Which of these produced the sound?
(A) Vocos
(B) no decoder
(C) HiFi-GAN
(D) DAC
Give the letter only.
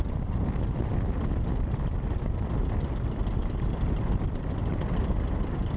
B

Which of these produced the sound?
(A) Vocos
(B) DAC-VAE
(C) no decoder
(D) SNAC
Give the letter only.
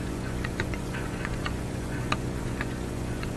A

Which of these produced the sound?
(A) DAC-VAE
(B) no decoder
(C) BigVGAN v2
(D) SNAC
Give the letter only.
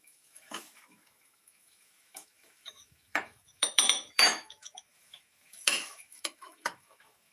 A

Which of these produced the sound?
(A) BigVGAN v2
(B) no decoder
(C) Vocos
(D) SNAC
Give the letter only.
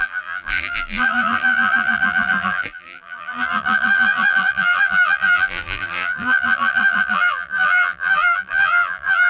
A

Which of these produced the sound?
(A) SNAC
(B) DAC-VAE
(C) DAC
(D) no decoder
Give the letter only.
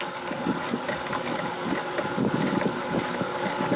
C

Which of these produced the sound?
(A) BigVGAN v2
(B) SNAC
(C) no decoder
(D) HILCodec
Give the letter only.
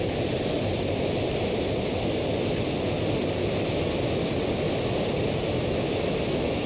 C